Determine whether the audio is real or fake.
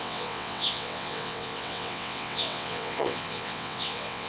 fake